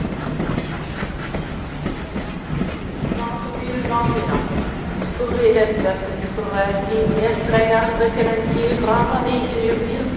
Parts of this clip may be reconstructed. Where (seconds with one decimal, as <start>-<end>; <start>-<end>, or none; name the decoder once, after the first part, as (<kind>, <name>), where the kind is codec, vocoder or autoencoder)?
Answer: 9.1-10.2 (vocoder, Vocos)